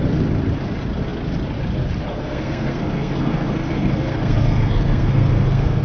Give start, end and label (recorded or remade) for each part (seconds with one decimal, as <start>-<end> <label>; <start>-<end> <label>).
0.0-2.1 recorded; 2.1-5.8 remade